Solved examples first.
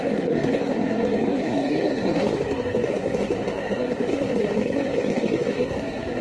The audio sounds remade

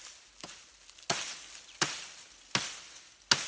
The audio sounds recorded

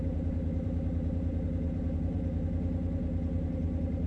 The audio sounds remade